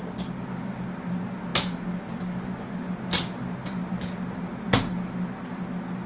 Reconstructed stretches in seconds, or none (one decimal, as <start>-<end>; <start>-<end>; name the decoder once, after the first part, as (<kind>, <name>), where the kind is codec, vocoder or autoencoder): none